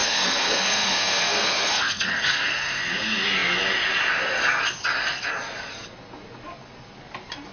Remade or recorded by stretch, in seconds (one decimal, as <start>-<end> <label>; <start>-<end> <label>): 0.0-2.8 remade; 2.8-7.5 recorded